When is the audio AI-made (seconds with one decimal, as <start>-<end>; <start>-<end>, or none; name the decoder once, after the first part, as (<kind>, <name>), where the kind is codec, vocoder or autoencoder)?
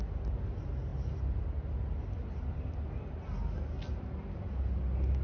none